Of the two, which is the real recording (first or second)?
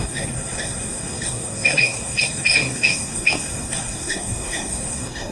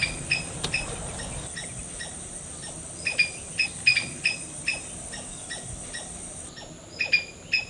second